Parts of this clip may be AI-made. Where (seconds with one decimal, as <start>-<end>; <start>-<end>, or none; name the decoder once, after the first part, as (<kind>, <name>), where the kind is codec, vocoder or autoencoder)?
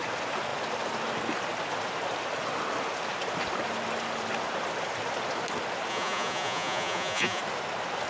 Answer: 5.9-7.4 (vocoder, Vocos)